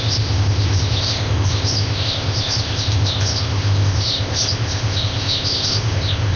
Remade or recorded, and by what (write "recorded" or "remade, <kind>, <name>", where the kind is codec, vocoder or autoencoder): remade, codec, ZipCodec